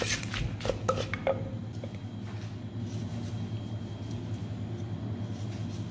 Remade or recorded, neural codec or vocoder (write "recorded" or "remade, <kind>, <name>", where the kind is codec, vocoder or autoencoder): recorded